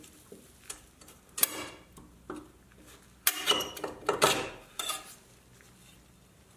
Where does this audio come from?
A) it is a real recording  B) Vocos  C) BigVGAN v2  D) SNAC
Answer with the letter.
A